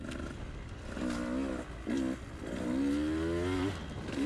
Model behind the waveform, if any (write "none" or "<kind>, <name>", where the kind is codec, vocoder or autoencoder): none